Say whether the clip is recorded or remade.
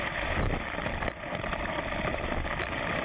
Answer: recorded